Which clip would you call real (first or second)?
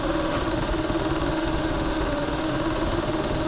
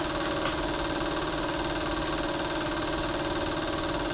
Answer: second